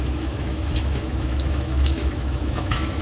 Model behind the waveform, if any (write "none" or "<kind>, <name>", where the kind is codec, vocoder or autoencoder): autoencoder, DAC-VAE